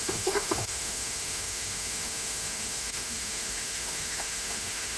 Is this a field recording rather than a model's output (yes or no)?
no